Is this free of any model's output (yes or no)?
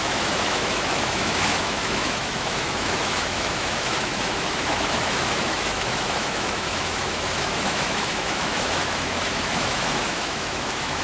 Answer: no